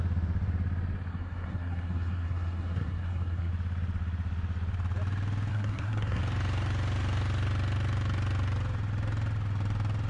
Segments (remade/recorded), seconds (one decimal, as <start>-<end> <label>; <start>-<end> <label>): 0.0-1.1 recorded; 1.1-3.5 remade; 3.5-5.5 recorded; 5.5-6.2 remade; 6.2-10.1 recorded